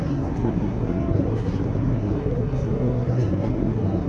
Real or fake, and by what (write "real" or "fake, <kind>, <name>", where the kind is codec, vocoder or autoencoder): fake, codec, SNAC